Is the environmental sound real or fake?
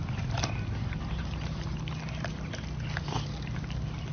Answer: real